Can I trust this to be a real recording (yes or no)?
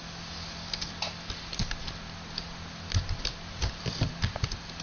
yes